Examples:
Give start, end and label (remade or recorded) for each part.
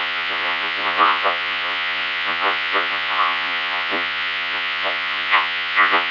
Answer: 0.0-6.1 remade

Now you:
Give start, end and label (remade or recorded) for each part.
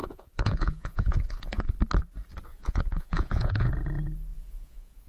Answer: 0.0-1.7 remade; 1.7-2.5 recorded; 2.5-3.7 remade; 3.7-4.3 recorded; 4.3-5.1 remade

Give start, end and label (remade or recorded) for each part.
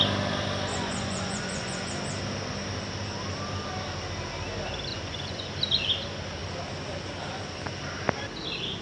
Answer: 0.0-0.7 recorded; 0.7-1.9 remade; 1.9-4.9 recorded; 4.9-5.5 remade; 5.5-8.8 recorded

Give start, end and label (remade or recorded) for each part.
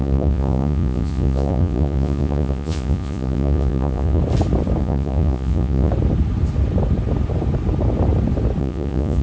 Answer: 0.0-4.2 remade; 4.2-4.8 recorded; 4.8-5.9 remade; 5.9-8.6 recorded; 8.6-9.2 remade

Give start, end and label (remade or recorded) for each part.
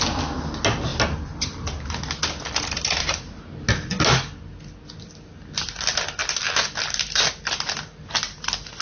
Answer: 0.0-8.8 recorded